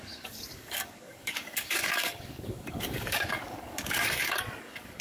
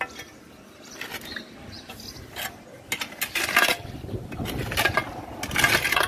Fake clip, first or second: first